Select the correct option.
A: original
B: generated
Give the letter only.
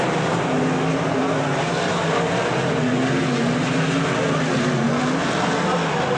A